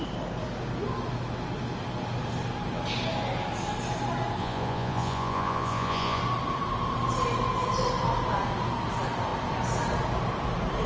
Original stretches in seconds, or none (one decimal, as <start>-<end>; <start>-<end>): 0.0-4.4; 6.2-10.9